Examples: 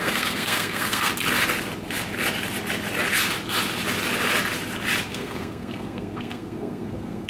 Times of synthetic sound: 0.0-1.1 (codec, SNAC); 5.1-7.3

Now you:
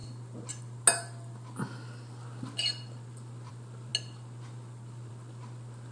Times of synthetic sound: none

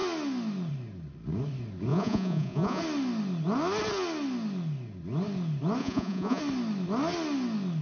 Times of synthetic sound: 1.9-2.8 (vocoder, Vocos); 5.8-6.4